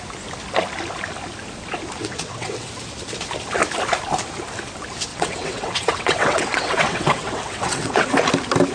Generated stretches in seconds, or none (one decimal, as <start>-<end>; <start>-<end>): 2.0-2.7; 5.1-8.1

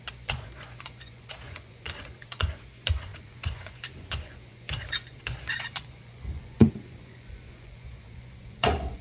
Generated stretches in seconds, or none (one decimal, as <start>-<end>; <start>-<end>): 0.0-9.0

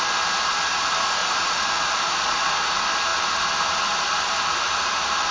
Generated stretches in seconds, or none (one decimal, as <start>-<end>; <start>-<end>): 1.2-2.7

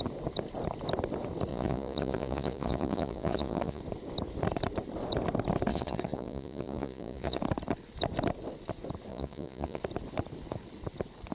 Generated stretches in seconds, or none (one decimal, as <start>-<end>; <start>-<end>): 1.5-3.8; 5.7-7.4; 9.1-9.8

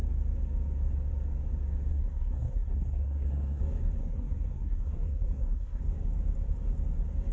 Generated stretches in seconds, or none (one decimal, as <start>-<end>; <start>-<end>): 1.9-3.6; 4.0-5.8

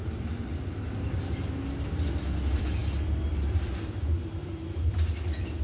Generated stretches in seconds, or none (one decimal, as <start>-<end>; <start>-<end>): 0.0-0.5; 1.9-5.6